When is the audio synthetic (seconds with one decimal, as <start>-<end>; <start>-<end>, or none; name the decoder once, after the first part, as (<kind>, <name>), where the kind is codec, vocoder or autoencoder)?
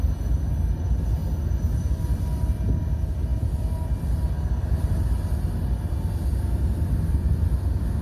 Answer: none